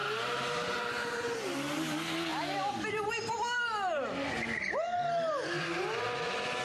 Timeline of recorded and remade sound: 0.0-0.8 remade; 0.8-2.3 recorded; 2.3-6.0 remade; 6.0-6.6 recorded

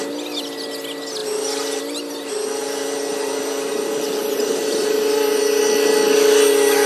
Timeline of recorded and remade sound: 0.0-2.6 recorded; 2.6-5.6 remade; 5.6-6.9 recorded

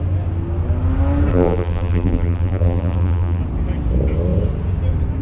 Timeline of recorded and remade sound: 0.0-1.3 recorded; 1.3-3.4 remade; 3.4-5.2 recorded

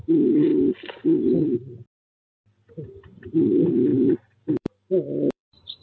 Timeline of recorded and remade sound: 0.0-0.5 remade; 0.5-2.7 recorded; 2.7-5.8 remade

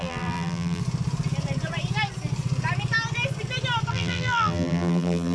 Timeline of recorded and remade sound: 0.0-0.8 remade; 0.8-3.9 recorded; 3.9-5.3 remade